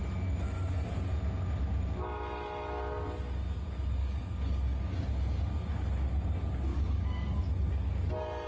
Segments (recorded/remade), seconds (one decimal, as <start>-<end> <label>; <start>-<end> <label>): 0.0-4.0 recorded; 4.0-5.0 remade; 5.0-6.7 recorded; 6.7-7.4 remade; 7.4-8.5 recorded